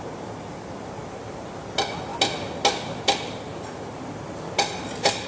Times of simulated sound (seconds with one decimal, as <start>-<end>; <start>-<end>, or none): 1.0-1.5

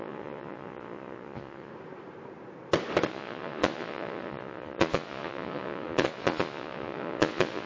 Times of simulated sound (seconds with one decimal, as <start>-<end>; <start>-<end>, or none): 0.0-1.7; 3.1-7.7

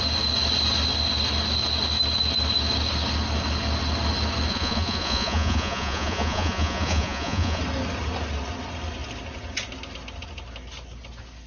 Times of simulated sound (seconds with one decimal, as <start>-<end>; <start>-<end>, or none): 4.5-7.6